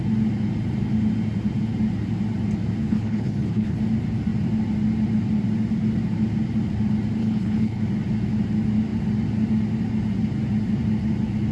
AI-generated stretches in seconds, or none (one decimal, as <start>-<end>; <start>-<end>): 2.8-3.8; 7.2-7.8